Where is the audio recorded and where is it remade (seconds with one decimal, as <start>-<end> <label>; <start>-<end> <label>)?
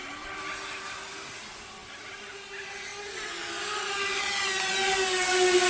0.0-5.7 recorded